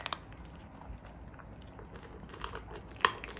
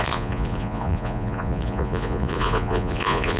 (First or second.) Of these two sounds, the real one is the first